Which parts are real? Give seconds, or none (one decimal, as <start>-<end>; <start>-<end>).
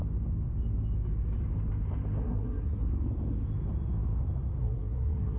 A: 0.0-2.2; 2.9-4.6